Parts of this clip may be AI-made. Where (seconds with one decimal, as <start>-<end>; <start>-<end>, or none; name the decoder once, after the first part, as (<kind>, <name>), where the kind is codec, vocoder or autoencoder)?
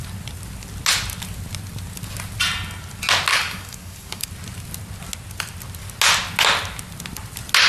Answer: 3.3-4.3 (codec, DAC)